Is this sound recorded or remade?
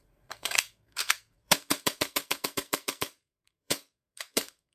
remade